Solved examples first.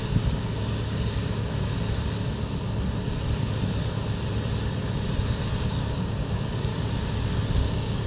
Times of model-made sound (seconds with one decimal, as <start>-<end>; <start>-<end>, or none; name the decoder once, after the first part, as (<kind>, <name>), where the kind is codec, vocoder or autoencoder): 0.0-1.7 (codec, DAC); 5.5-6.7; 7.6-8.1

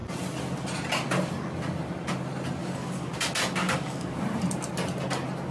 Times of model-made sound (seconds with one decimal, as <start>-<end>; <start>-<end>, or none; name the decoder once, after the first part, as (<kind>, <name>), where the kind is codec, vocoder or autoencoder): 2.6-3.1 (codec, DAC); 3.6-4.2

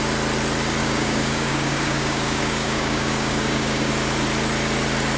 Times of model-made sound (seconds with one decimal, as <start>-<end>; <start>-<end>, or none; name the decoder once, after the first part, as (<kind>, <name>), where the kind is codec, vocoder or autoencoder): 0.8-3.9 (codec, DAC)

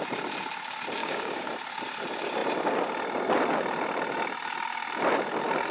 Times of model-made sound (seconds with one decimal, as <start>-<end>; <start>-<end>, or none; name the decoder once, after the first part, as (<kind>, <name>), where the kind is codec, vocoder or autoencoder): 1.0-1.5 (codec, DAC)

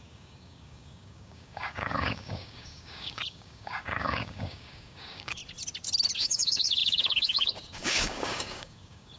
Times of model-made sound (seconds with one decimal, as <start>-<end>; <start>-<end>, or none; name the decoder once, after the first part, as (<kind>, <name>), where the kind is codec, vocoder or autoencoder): 0.0-5.4 (codec, DAC); 6.2-9.2

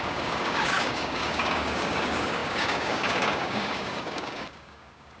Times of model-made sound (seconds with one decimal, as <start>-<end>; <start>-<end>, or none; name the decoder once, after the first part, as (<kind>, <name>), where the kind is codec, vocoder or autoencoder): 0.0-5.2 (codec, DAC)

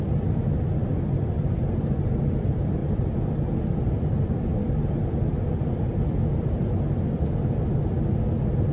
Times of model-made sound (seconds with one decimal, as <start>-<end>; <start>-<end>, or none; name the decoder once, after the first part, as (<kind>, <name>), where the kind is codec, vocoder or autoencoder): none

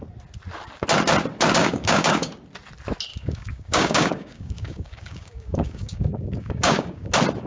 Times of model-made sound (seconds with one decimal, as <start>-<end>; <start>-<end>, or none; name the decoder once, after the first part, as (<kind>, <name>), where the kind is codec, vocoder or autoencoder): 1.6-2.3 (codec, DAC); 3.1-7.1